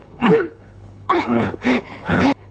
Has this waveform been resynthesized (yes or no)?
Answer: yes